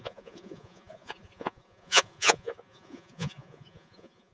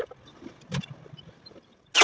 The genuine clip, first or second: second